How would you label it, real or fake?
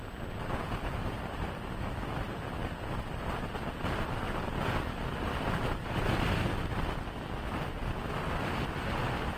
real